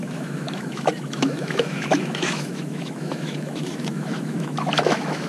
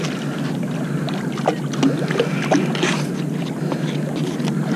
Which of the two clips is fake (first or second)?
first